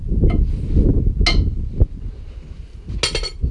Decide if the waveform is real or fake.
real